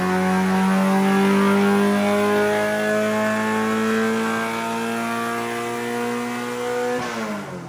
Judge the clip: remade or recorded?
recorded